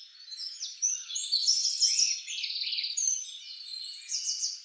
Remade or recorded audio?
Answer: recorded